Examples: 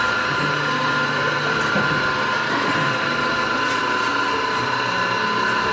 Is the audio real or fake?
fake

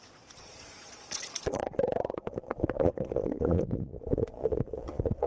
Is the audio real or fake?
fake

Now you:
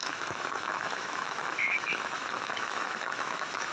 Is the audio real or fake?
fake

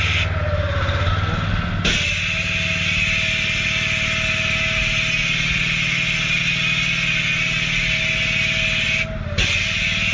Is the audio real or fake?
real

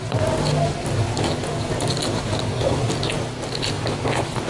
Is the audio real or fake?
real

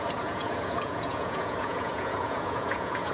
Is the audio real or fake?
fake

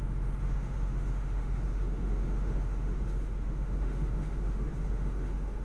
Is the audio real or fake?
fake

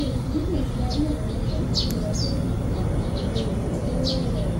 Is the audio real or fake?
real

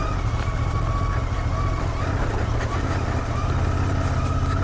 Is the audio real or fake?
real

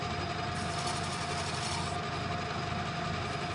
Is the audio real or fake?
real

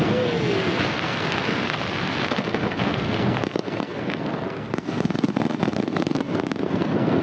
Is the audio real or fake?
fake